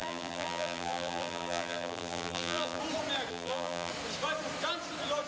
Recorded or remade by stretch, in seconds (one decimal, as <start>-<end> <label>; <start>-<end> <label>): 0.0-2.8 remade; 2.8-3.3 recorded; 3.3-3.9 remade; 3.9-5.3 recorded